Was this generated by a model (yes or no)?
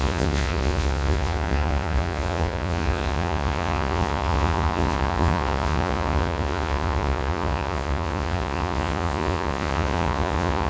yes